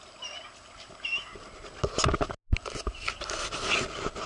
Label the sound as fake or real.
real